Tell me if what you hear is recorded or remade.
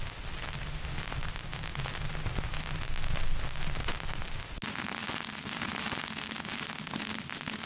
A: recorded